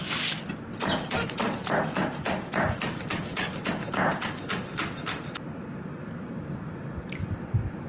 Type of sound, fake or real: real